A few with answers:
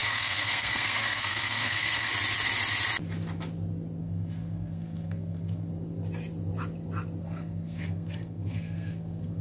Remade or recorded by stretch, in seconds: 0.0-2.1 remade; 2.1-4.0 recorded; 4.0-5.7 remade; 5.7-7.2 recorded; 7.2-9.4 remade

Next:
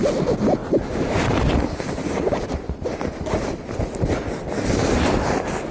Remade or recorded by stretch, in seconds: 0.0-0.6 recorded; 0.6-3.7 remade; 3.7-5.7 recorded

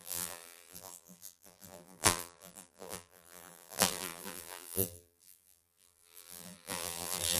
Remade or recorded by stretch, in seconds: 0.0-7.4 remade

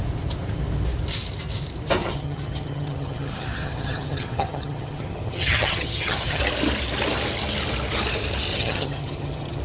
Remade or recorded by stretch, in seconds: 0.0-2.0 recorded; 2.0-6.4 remade; 6.4-8.5 recorded; 8.5-9.6 remade

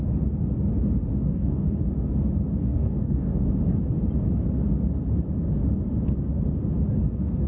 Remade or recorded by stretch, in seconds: 0.0-1.2 recorded; 1.2-1.8 remade; 1.8-2.6 recorded; 2.6-3.5 remade; 3.5-7.5 recorded